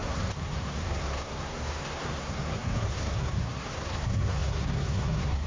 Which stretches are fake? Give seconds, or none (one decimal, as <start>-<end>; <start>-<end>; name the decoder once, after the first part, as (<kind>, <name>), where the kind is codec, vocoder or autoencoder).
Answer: 0.0-5.5 (codec, SNAC)